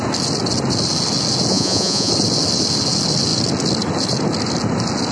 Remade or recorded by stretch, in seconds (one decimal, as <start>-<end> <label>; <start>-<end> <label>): 0.0-1.5 recorded; 1.5-2.1 remade; 2.1-5.1 recorded